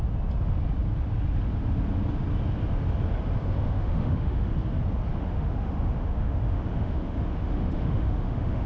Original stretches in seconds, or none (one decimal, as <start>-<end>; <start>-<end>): 0.0-3.4; 4.5-5.1